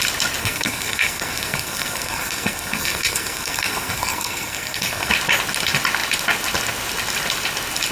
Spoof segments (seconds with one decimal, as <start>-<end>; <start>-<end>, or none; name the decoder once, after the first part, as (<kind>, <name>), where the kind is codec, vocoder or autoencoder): 0.4-5.1 (codec, SNAC)